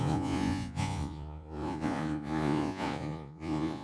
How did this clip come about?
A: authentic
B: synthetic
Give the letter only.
B